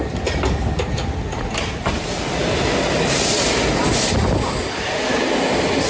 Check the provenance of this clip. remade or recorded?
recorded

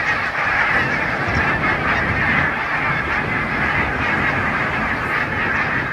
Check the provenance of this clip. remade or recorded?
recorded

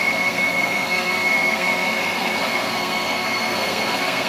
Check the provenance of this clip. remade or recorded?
remade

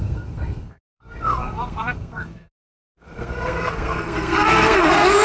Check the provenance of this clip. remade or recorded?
remade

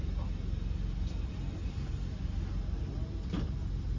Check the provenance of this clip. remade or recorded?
recorded